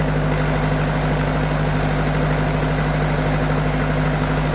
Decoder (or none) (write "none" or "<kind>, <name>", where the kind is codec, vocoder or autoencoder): none